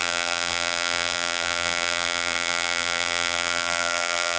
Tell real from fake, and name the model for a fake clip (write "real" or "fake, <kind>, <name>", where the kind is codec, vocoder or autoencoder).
fake, vocoder, BigVGAN v2